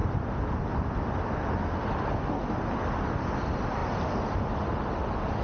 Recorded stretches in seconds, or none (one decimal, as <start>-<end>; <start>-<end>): 0.0-3.8; 4.6-5.4

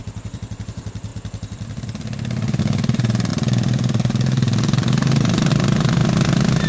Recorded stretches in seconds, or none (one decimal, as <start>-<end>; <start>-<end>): 1.1-2.6; 6.0-6.7